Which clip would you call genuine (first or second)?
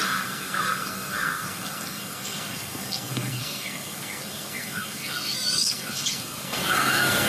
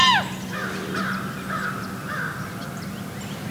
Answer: second